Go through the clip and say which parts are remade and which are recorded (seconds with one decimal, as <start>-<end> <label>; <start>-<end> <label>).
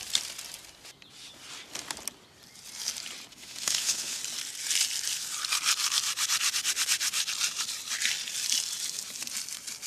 0.0-3.3 recorded; 3.3-4.2 remade; 4.2-9.9 recorded